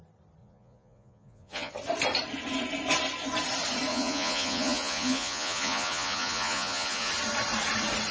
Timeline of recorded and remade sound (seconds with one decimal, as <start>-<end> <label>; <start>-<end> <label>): 0.0-0.4 recorded; 0.4-1.7 remade; 1.7-3.9 recorded; 3.9-7.1 remade; 7.1-8.1 recorded